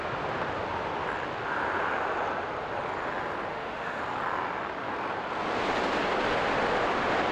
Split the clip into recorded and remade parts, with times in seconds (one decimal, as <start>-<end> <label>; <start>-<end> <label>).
0.0-3.5 recorded; 3.5-4.0 remade; 4.0-7.3 recorded